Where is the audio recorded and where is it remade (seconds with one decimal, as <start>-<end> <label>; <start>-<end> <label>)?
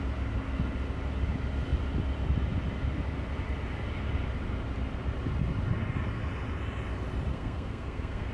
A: 0.0-7.3 recorded; 7.3-8.3 remade